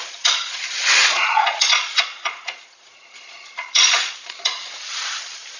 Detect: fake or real fake